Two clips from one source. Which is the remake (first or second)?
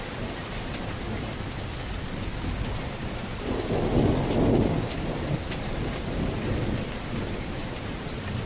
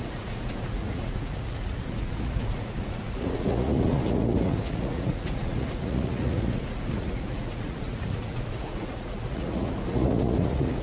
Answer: second